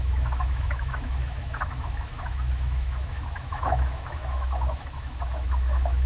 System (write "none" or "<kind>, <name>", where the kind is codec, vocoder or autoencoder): autoencoder, DAC-VAE